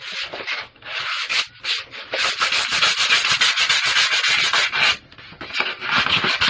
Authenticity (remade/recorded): recorded